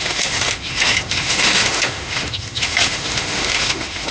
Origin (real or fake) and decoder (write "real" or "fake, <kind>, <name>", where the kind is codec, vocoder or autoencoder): fake, autoencoder, DAC-VAE